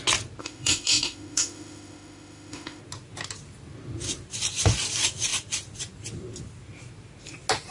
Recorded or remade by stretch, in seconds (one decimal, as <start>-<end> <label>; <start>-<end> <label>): 0.0-0.4 recorded; 0.4-2.8 remade; 2.8-7.7 recorded